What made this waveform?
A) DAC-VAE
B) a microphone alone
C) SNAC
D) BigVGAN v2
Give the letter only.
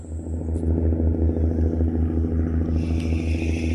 B